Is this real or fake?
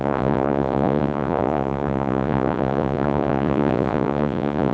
fake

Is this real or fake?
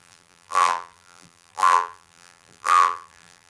fake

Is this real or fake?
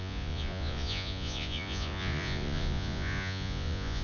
fake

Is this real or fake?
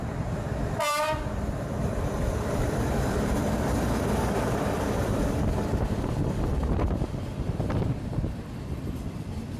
fake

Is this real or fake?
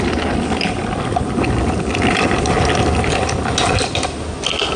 real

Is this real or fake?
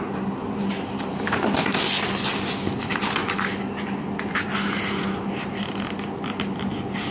real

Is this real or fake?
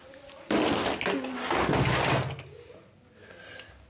real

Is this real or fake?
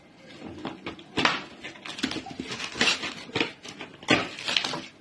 real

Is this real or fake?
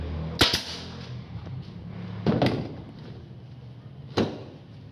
real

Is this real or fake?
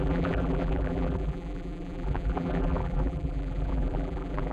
fake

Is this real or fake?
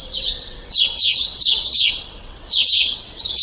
fake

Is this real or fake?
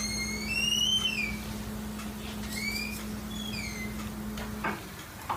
real